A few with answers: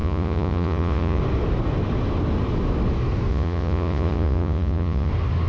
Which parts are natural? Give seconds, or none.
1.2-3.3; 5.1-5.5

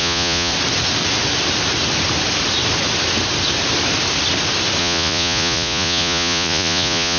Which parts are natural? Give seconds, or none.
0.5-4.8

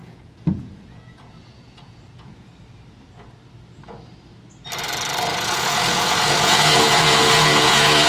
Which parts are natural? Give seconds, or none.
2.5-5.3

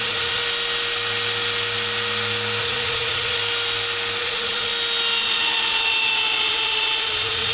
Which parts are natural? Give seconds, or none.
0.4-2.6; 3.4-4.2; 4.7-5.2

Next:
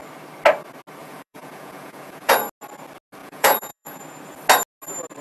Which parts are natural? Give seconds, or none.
0.0-1.0; 2.3-3.2; 4.0-5.2

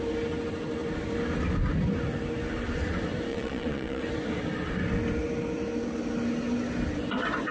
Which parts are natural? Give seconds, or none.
0.0-3.3; 4.0-7.5

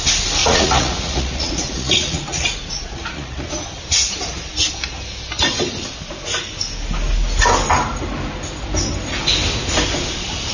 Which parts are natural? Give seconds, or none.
0.0-0.4; 3.5-10.5

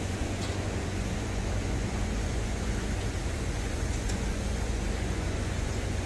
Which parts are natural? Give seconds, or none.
none